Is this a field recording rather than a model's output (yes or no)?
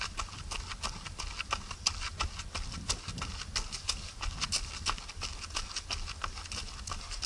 yes